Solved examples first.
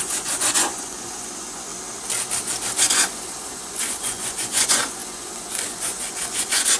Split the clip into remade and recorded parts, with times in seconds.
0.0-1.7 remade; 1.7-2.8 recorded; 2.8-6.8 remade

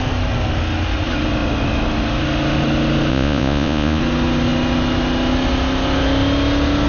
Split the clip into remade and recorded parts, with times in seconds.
0.0-3.1 recorded; 3.1-4.0 remade; 4.0-6.9 recorded

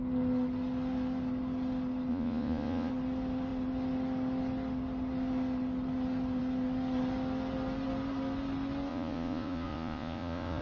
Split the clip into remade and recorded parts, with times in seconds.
0.0-2.1 recorded; 2.1-2.9 remade; 2.9-8.9 recorded; 8.9-10.6 remade